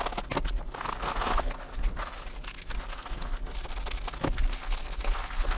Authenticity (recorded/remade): recorded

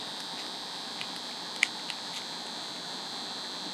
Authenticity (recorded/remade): recorded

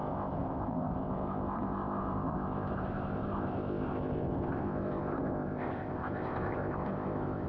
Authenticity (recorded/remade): remade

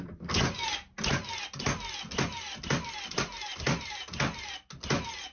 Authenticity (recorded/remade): recorded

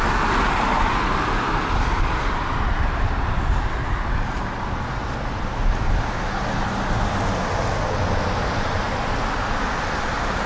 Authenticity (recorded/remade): recorded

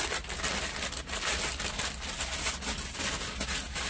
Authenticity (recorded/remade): recorded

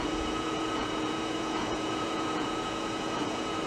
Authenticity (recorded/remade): remade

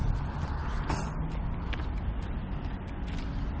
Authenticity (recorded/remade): recorded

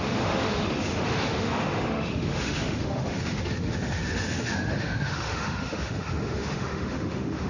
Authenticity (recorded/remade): remade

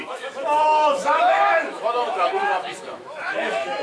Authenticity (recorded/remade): remade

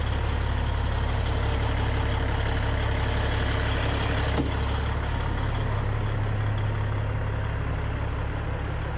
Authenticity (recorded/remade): recorded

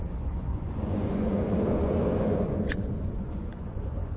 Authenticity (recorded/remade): remade